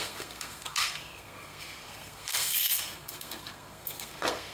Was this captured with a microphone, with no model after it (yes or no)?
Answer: no